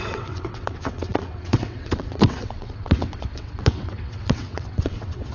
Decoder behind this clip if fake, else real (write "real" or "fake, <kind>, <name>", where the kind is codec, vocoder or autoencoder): fake, vocoder, WaveNeXt